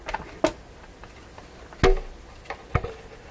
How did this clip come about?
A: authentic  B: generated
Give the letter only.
A